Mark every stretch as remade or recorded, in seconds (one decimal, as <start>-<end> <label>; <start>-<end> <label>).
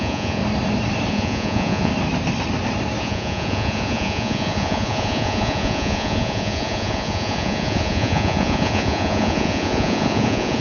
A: 0.0-0.4 remade; 0.4-1.1 recorded; 1.1-1.9 remade; 1.9-3.0 recorded; 3.0-10.6 remade